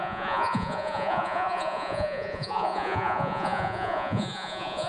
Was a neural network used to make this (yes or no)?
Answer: yes